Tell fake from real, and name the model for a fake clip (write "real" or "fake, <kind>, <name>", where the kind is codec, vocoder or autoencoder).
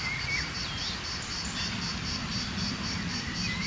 real